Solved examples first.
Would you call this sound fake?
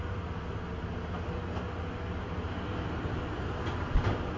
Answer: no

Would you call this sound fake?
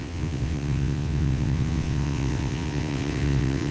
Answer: yes